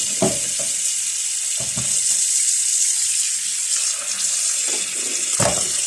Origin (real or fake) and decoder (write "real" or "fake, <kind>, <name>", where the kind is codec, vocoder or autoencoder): real